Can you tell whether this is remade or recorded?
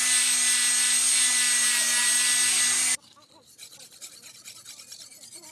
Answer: recorded